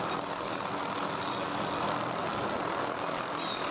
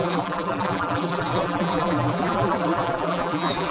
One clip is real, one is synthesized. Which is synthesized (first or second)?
second